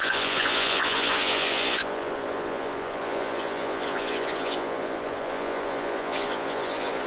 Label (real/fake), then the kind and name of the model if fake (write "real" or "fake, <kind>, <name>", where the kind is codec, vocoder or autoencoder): fake, vocoder, Vocos